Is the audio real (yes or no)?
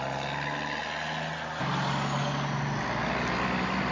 yes